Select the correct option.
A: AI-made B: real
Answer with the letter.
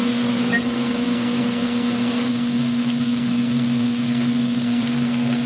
A